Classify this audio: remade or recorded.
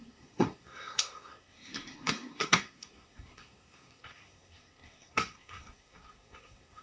remade